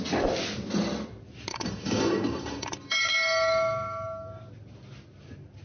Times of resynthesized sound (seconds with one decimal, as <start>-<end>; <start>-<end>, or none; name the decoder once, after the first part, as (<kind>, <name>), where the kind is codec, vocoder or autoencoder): 1.5-4.4 (codec, DAC)